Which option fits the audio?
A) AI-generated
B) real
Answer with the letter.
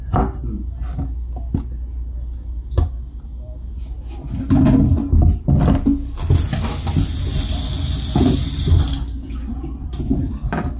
B